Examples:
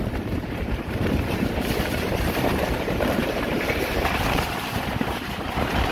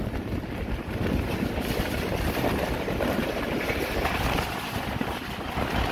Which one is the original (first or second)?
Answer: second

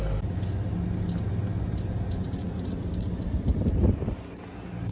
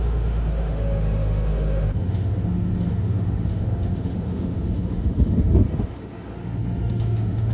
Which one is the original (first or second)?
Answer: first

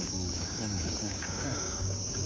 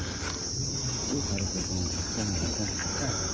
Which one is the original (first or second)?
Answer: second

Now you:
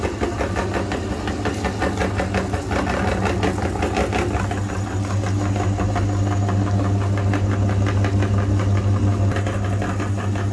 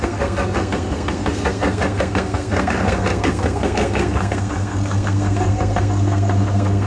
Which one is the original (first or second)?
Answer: first